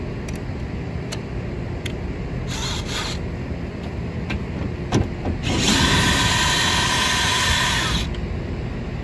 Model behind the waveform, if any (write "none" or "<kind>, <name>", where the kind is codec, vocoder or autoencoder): none